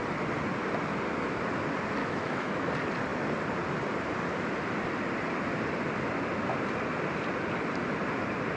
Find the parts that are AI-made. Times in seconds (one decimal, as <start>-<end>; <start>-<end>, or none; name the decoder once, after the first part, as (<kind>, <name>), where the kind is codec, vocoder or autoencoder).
2.0-2.7 (autoencoder, DAC-VAE)